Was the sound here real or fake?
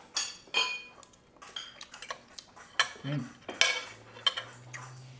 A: real